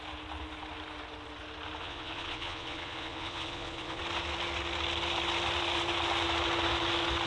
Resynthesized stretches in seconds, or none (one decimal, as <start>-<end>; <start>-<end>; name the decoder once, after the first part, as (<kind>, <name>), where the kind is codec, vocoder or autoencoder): 1.8-4.0 (vocoder, Vocos)